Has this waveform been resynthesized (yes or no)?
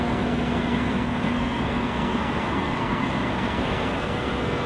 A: yes